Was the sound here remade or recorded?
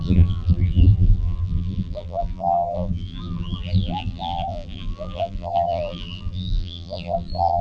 remade